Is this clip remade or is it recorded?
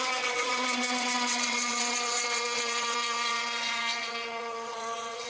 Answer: remade